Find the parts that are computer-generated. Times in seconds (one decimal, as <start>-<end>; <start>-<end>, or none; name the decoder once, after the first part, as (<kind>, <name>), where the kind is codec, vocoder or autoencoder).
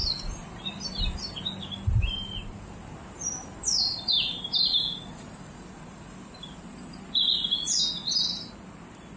none